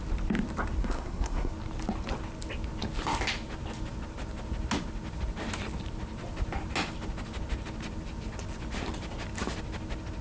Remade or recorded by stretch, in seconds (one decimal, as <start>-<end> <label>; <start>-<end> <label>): 0.0-0.8 recorded; 0.8-1.5 remade; 1.5-10.2 recorded